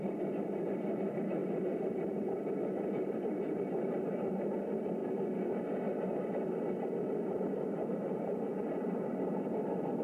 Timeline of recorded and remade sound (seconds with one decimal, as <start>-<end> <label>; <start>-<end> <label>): 0.0-5.0 remade; 5.0-8.5 recorded; 8.5-10.0 remade